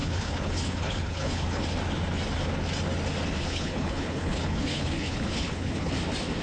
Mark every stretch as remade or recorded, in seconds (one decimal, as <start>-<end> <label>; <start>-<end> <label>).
0.0-1.6 remade; 1.6-3.4 recorded; 3.4-5.9 remade; 5.9-6.4 recorded